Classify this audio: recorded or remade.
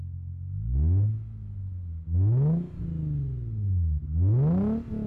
recorded